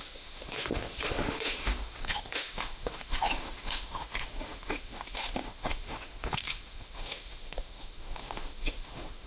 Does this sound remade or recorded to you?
remade